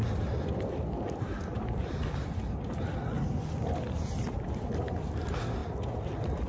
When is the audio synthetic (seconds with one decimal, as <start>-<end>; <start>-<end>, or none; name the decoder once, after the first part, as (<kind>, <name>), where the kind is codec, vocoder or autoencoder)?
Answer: none